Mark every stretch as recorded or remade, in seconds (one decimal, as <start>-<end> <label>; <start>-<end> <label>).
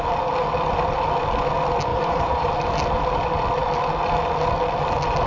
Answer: 0.0-1.9 recorded; 1.9-2.5 remade; 2.5-5.3 recorded